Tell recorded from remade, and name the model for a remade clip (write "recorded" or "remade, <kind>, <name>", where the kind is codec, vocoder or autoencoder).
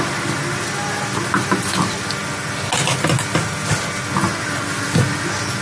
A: recorded